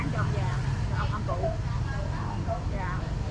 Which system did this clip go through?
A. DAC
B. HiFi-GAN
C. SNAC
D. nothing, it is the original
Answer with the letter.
D